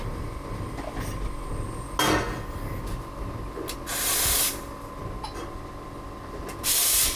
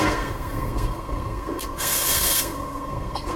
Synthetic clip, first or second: second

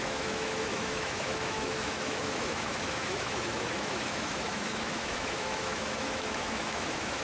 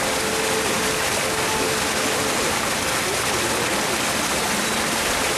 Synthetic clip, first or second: first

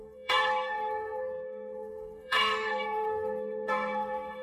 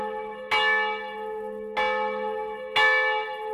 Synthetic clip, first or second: first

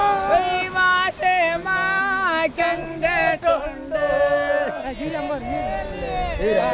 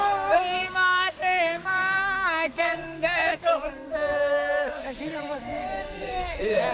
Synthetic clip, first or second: second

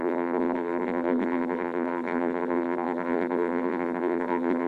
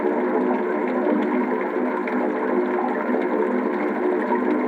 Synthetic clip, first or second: first